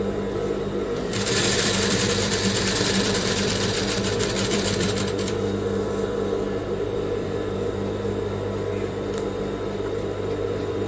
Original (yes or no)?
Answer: no